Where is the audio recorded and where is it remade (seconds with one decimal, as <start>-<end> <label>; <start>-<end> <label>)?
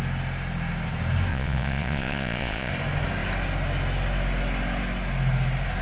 0.0-1.3 recorded; 1.3-2.7 remade; 2.7-5.8 recorded